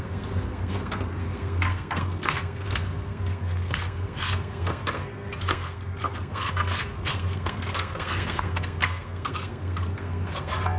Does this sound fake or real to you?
fake